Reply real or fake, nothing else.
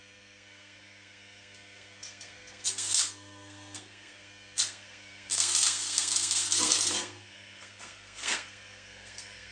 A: fake